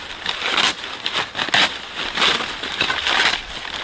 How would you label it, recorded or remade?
recorded